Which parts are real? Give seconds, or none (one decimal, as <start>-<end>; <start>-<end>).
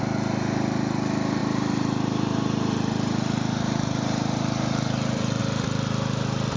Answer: 0.0-1.4; 5.4-6.6